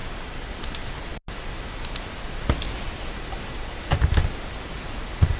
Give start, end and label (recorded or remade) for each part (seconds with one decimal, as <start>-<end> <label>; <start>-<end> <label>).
0.0-0.6 remade; 0.6-5.4 recorded

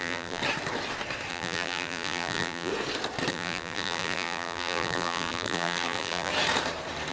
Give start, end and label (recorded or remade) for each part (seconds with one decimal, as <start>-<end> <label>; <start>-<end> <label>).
0.0-0.4 remade; 0.4-1.3 recorded; 1.3-2.7 remade; 2.7-3.3 recorded; 3.3-6.3 remade; 6.3-7.1 recorded